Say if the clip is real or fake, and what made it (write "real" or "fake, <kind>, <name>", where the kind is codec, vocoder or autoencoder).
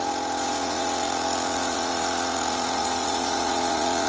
fake, vocoder, Vocos